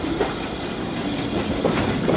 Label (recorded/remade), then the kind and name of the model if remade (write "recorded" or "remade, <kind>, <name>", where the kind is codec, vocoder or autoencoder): recorded